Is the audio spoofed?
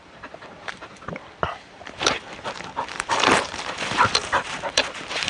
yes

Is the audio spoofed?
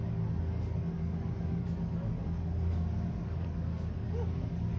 yes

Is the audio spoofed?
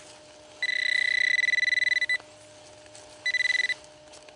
no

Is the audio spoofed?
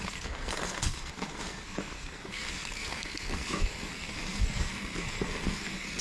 yes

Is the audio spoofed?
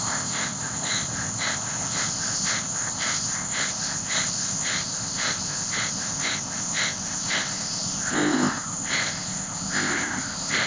yes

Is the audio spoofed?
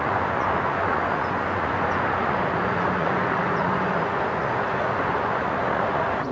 yes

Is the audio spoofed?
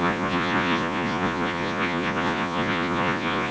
yes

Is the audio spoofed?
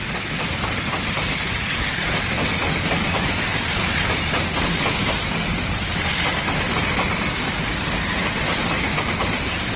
no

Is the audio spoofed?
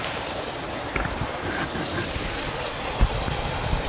no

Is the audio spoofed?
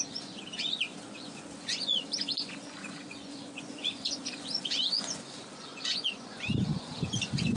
yes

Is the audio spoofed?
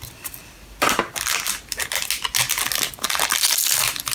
no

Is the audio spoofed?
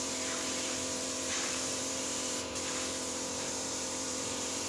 yes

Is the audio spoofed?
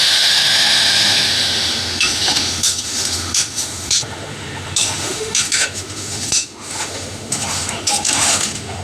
yes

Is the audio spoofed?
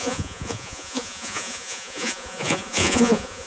yes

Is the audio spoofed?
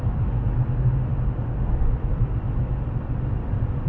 yes